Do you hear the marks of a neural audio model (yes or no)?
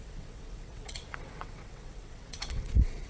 yes